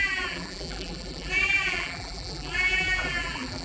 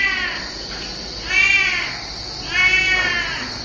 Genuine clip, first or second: second